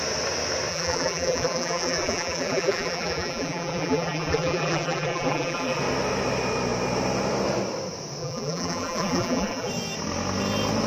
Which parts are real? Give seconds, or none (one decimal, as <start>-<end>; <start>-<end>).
0.0-0.7; 5.8-8.2; 9.7-10.9